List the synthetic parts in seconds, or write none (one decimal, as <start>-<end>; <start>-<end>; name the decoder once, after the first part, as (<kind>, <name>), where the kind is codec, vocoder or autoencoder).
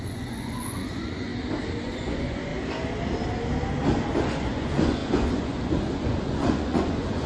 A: 0.0-1.3 (vocoder, Vocos); 1.8-2.5; 4.1-7.3